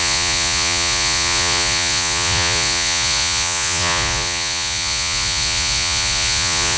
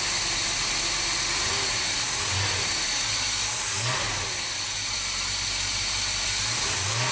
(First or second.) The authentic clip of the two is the second